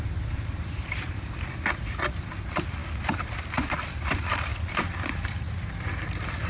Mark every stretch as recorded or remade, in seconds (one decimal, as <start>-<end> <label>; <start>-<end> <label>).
0.0-2.8 remade; 2.8-3.5 recorded; 3.5-6.5 remade